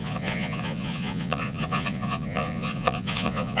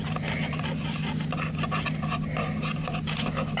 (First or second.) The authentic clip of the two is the second